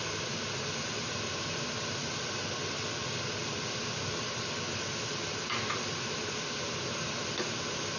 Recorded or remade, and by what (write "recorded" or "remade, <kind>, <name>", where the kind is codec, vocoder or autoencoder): recorded